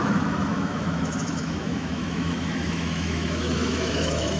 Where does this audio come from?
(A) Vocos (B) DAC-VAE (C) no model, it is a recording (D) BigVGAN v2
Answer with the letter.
B